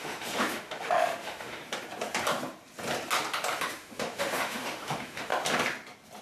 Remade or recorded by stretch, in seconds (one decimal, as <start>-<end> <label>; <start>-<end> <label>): 0.0-1.6 remade; 1.6-3.6 recorded; 3.6-5.3 remade; 5.3-6.2 recorded